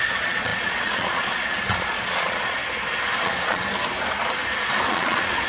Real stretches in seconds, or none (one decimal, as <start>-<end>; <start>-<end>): 2.6-3.2; 3.6-4.9